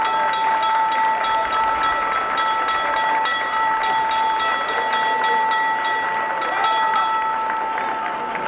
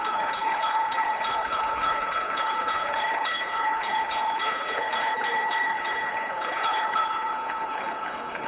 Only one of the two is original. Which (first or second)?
first